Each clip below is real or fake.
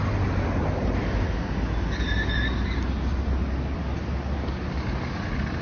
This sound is real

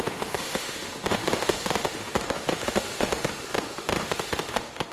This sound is fake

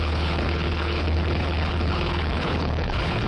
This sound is fake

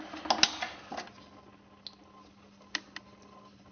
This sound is real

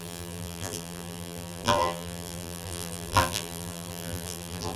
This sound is fake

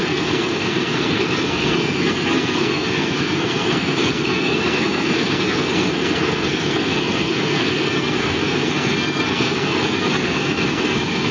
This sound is fake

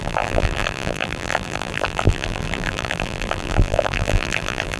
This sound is fake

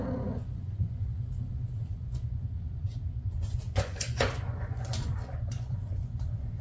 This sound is fake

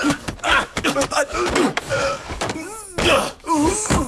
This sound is fake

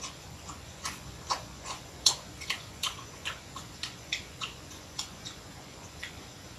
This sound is fake